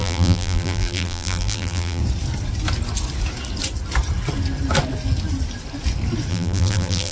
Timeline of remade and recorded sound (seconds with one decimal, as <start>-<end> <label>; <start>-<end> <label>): 0.0-2.0 remade; 2.0-6.3 recorded; 6.3-7.1 remade